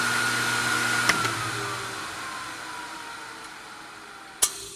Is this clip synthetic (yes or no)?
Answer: no